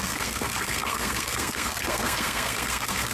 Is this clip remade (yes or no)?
yes